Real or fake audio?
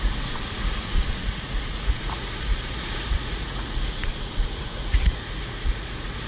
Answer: fake